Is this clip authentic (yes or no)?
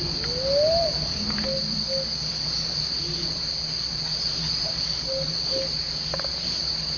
yes